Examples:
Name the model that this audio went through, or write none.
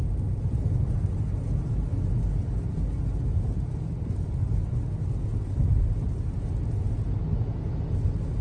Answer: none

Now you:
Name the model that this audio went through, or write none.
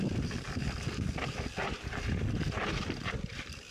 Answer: vocoder, BigVGAN v2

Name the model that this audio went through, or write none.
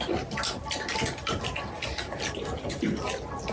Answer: none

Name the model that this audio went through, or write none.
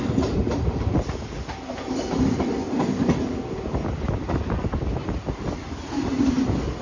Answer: none